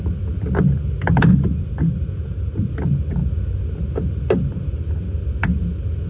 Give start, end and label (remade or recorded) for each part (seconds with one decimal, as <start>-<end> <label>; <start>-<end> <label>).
0.0-1.3 recorded; 1.3-2.7 remade; 2.7-6.1 recorded